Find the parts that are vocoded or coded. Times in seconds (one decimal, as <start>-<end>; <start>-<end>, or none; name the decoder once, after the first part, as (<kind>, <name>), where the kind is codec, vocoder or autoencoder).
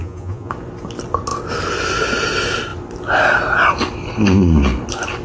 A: 0.0-0.5 (vocoder, Vocos)